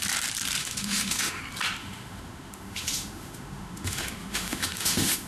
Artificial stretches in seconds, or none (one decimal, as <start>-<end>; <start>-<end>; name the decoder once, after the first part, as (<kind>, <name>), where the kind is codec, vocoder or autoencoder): 0.6-1.4 (autoencoder, DAC-VAE); 1.8-5.3